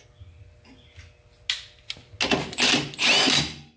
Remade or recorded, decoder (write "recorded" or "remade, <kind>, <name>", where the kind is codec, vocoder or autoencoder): recorded